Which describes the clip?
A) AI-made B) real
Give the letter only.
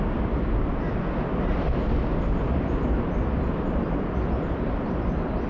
B